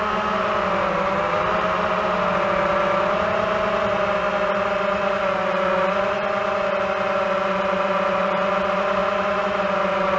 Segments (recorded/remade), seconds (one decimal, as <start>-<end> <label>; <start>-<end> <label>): 0.0-10.2 recorded